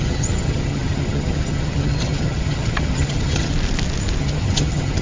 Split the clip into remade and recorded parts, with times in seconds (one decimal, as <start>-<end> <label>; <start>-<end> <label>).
0.0-3.5 remade; 3.5-4.2 recorded; 4.2-5.0 remade